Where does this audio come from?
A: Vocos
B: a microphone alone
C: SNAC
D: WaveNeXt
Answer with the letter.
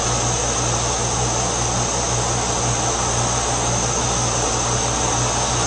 B